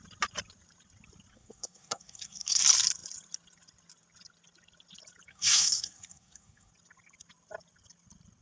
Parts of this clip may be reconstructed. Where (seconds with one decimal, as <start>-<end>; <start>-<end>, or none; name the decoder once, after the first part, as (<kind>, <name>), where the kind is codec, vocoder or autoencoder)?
1.3-2.6 (codec, SNAC); 5.3-6.7